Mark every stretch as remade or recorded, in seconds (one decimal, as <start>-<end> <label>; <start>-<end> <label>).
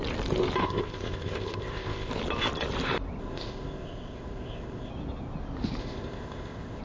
0.0-0.6 recorded; 0.6-2.1 remade; 2.1-3.2 recorded; 3.2-4.9 remade; 4.9-5.8 recorded; 5.8-6.8 remade